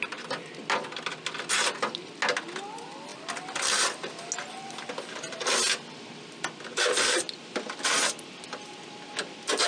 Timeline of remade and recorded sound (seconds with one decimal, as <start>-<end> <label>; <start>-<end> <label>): 0.0-9.7 recorded